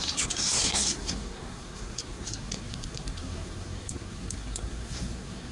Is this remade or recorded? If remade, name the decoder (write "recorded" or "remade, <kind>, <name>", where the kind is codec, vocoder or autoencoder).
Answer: remade, codec, SNAC